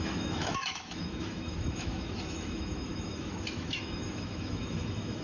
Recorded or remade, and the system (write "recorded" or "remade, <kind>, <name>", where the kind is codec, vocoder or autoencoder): remade, autoencoder, DAC-VAE